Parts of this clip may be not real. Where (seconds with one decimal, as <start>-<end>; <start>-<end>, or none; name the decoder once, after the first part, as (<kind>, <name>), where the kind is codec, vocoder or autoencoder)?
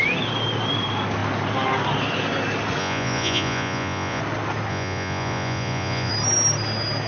2.8-4.2 (vocoder, Vocos); 4.7-6.1